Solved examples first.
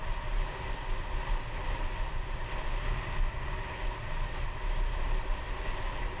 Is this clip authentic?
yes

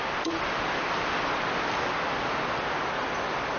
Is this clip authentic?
yes